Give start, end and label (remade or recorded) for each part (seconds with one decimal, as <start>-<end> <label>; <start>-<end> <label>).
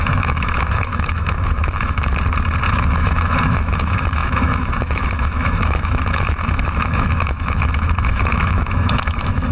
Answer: 0.0-2.1 remade; 2.1-2.7 recorded; 2.7-9.5 remade